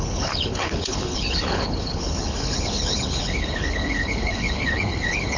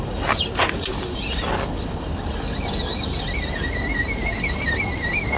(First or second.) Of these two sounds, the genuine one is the second